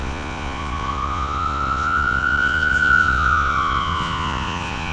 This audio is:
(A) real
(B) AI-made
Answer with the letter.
B